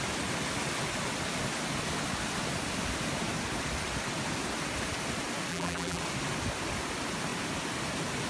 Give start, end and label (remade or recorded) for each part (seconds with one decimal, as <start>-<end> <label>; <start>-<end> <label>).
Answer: 0.0-5.5 recorded; 5.5-6.0 remade; 6.0-8.3 recorded